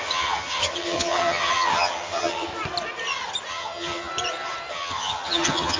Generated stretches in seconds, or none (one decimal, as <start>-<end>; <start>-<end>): 0.0-2.5; 3.5-4.1; 4.7-5.8

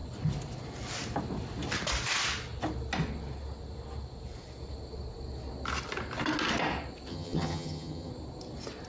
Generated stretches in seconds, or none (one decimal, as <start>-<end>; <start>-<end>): 7.1-8.1

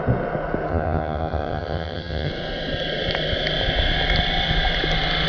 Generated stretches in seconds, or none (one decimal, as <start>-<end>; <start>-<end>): 0.7-2.3

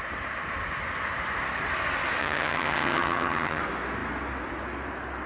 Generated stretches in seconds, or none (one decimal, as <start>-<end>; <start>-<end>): 2.2-3.6

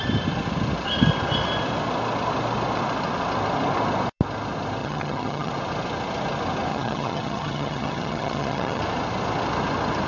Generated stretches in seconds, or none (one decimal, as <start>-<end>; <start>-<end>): 4.8-5.5; 6.7-8.8

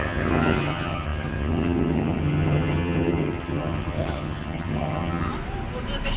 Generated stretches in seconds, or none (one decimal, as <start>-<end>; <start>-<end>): 0.0-5.3

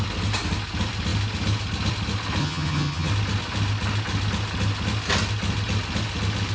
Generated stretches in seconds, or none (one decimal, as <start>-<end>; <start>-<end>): 2.4-3.1